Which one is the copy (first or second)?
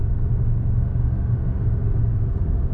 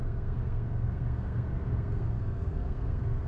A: second